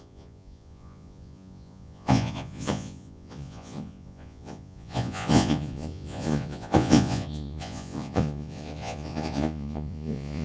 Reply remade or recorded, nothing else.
remade